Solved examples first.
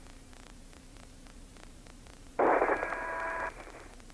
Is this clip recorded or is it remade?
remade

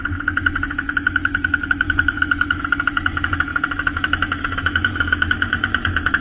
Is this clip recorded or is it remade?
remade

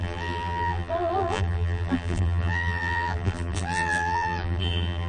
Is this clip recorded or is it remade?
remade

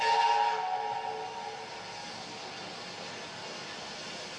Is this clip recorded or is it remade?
recorded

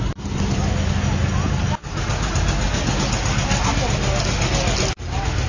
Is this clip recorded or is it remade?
recorded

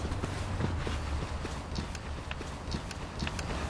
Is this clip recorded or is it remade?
recorded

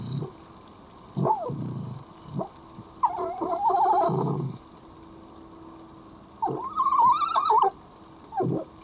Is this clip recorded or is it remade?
recorded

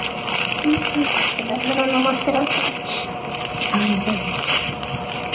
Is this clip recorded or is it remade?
remade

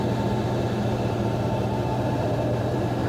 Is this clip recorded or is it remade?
remade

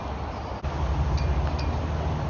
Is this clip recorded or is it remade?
recorded